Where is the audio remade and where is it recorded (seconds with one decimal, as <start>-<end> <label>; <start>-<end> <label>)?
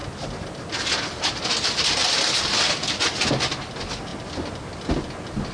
0.0-5.5 recorded